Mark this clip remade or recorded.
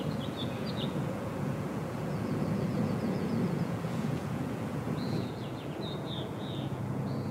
remade